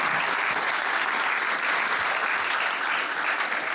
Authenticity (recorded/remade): recorded